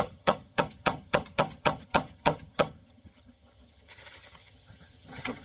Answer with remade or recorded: remade